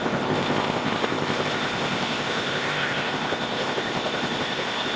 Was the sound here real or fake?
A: fake